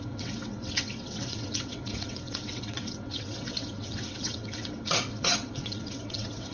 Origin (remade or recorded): remade